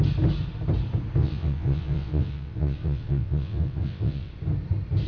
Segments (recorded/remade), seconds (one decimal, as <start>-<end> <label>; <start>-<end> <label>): 0.0-1.2 recorded; 1.2-4.3 remade; 4.3-5.1 recorded